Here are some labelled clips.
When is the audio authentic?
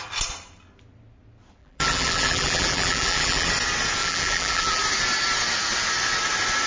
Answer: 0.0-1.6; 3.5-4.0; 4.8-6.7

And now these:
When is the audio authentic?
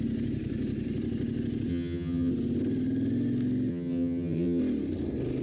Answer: 0.0-1.7; 2.3-3.7; 4.6-5.4